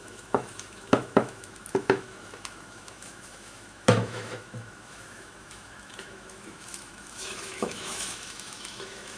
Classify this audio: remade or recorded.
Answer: remade